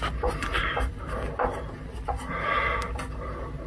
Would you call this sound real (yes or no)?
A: yes